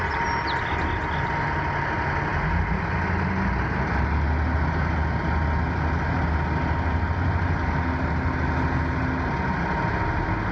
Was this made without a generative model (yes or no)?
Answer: yes